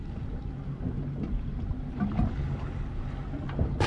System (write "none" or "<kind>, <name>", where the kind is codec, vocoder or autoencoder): none